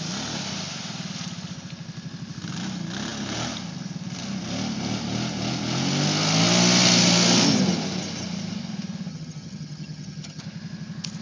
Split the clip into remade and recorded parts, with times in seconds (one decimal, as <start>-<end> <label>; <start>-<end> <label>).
0.0-9.1 recorded; 9.1-10.4 remade; 10.4-11.2 recorded